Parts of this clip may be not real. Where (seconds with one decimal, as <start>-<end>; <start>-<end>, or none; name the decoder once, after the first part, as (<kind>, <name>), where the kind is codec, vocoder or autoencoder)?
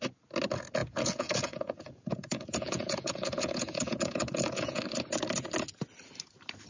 0.8-4.8 (vocoder, Vocos)